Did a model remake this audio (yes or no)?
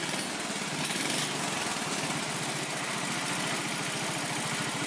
no